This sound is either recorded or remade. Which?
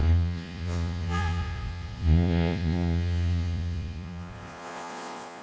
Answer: remade